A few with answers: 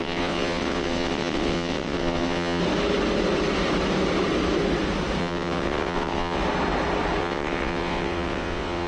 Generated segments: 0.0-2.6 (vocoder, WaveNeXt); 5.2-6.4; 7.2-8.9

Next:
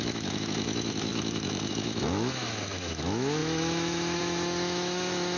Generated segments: 0.0-5.4 (autoencoder, DAC-VAE)

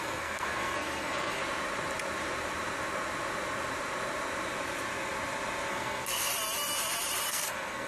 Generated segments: 0.0-1.4 (codec, SNAC); 5.7-6.3; 7.3-7.9

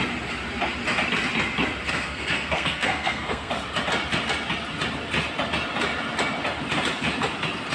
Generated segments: 1.9-3.5 (codec, SNAC)

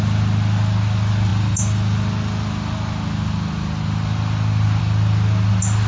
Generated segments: none

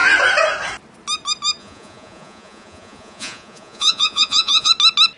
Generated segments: 1.6-4.7 (vocoder, Vocos)